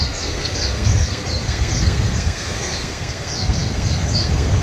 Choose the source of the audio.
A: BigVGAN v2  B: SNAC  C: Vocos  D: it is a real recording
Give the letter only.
B